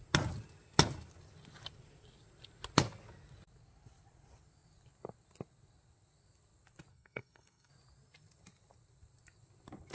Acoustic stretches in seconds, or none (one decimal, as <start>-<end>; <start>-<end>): 0.0-6.9; 7.7-9.9